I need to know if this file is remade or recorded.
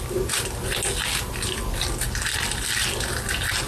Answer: recorded